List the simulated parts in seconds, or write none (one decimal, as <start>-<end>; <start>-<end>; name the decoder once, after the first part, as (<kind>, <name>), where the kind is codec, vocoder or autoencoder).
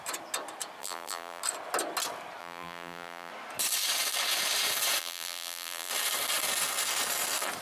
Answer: 0.8-1.4 (vocoder, BigVGAN v2); 2.4-3.3; 5.0-5.9